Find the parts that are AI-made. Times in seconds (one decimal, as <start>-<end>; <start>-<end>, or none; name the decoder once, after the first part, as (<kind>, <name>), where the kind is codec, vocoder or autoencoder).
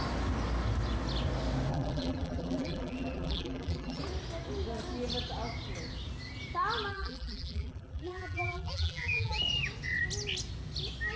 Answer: 1.7-4.0 (vocoder, BigVGAN v2); 6.9-9.4